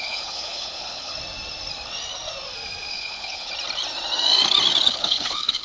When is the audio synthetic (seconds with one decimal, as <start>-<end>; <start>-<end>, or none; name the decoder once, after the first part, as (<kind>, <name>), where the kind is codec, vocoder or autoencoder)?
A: 0.0-1.1 (codec, HILCodec); 2.9-3.5; 4.9-5.6